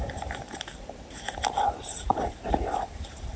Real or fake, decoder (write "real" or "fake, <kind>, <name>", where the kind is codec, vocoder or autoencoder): fake, vocoder, BigVGAN v2